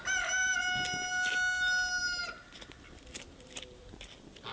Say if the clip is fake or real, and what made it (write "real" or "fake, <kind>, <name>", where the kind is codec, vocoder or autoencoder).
real